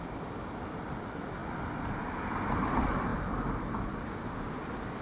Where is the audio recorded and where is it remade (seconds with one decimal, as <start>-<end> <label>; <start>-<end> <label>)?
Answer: 0.0-1.4 recorded; 1.4-2.0 remade; 2.0-3.1 recorded; 3.1-4.1 remade; 4.1-5.0 recorded